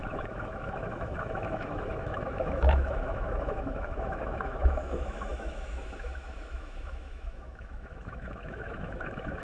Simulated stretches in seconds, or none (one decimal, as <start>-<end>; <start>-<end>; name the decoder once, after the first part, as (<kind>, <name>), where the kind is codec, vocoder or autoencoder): 0.0-9.4 (autoencoder, DAC-VAE)